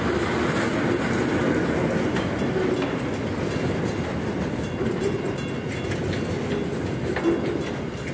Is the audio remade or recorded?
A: recorded